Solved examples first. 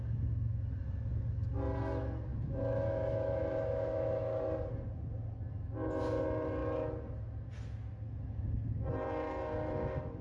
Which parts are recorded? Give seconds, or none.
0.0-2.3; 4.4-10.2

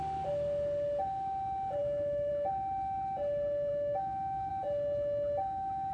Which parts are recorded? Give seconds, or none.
0.0-1.8; 2.3-3.7; 4.5-5.9

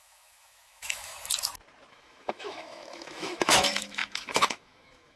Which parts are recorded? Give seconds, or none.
1.1-1.9